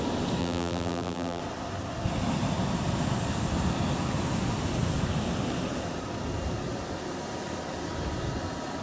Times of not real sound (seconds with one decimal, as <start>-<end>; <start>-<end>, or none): 0.4-1.4